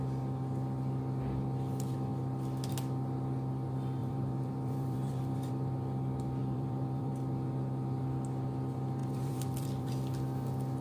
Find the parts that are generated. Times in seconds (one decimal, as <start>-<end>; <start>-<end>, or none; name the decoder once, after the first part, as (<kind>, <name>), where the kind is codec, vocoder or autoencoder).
4.0-5.5 (vocoder, BigVGAN v2); 6.4-7.1; 9.0-9.9